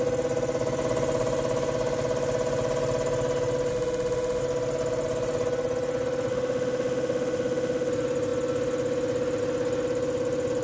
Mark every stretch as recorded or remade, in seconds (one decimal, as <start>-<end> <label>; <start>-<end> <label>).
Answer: 0.0-3.7 recorded; 3.7-4.4 remade; 4.4-6.3 recorded; 6.3-7.9 remade; 7.9-10.6 recorded